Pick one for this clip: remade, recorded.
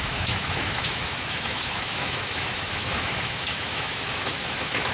remade